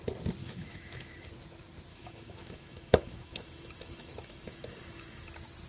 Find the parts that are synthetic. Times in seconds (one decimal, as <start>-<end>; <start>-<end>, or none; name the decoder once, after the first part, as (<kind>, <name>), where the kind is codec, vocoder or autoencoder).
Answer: 0.4-1.3 (autoencoder, DAC-VAE); 1.9-5.3